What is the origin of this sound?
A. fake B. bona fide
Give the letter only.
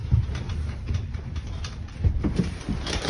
A